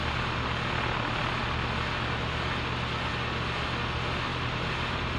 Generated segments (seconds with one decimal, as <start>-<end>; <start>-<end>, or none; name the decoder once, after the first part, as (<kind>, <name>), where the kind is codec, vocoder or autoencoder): 4.3-5.2 (vocoder, BigVGAN v2)